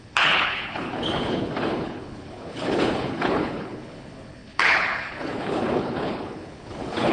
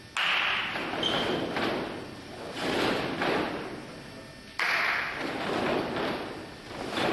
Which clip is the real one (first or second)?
second